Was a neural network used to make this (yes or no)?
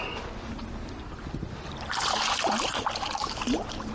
no